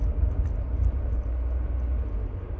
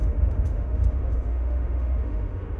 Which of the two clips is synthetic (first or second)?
second